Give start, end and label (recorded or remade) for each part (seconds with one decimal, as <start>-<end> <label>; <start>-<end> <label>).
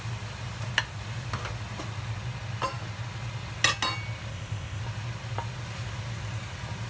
0.0-4.3 recorded; 4.3-4.8 remade; 4.8-6.9 recorded